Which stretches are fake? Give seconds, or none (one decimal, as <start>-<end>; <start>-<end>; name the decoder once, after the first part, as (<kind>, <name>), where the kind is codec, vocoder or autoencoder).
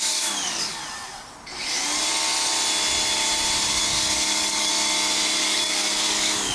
0.0-0.8 (codec, DAC); 3.7-4.7; 5.4-6.5